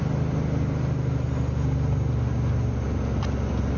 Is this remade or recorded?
recorded